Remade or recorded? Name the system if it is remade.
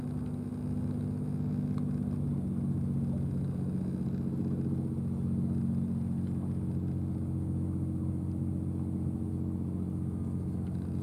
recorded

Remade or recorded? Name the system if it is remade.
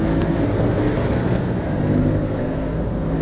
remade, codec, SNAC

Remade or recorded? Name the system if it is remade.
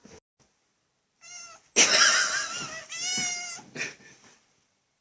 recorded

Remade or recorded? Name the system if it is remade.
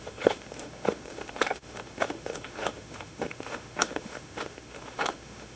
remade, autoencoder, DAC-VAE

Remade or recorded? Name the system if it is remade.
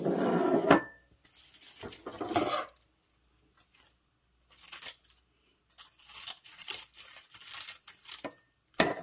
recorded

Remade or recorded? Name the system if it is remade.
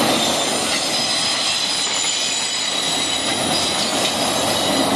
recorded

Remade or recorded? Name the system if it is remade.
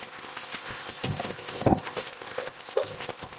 remade, codec, ZipCodec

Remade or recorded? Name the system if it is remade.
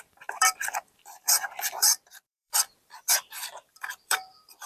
remade, vocoder, BigVGAN v2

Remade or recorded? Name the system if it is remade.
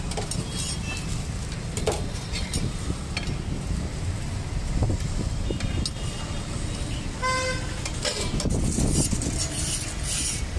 recorded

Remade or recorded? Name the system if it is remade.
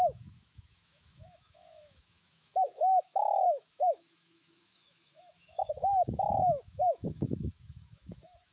remade, autoencoder, DAC-VAE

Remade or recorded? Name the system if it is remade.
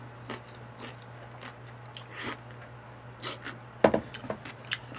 recorded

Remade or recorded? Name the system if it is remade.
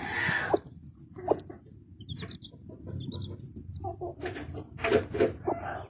recorded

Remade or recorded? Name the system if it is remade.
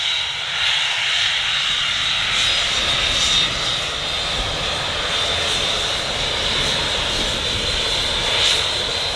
recorded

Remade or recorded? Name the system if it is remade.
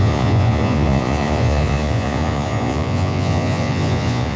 remade, vocoder, Vocos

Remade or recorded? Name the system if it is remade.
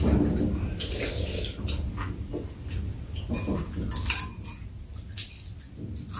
recorded